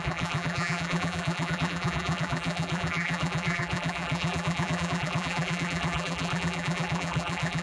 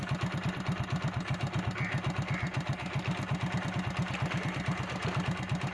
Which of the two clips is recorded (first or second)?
second